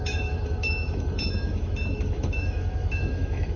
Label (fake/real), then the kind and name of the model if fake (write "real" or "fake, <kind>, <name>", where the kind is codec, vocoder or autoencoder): fake, autoencoder, DAC-VAE